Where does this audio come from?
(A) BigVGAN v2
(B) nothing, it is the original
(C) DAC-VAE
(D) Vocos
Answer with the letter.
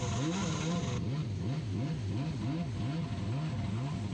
B